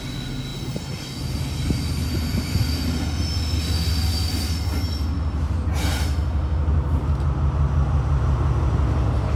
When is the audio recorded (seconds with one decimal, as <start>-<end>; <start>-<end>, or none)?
0.0-9.4

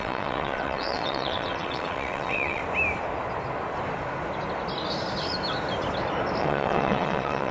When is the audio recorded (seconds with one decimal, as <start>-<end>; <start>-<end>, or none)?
2.6-6.4

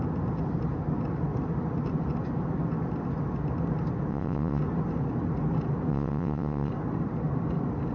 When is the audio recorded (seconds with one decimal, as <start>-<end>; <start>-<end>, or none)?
0.0-4.1; 4.6-5.9; 6.7-7.9

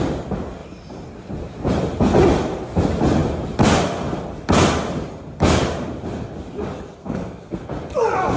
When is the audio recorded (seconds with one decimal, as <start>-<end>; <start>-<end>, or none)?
0.0-7.0; 7.6-8.4

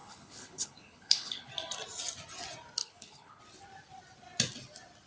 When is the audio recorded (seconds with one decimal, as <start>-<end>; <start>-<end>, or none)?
1.5-2.8; 3.4-5.1